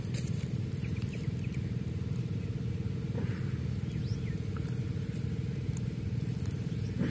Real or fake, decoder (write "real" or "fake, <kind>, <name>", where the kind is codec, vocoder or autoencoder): real